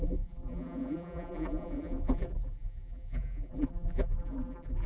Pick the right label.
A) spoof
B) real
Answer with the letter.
A